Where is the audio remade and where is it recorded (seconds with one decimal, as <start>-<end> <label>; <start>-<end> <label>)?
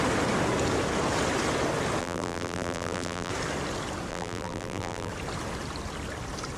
0.0-2.0 recorded; 2.0-3.3 remade; 3.3-4.1 recorded; 4.1-5.1 remade; 5.1-6.6 recorded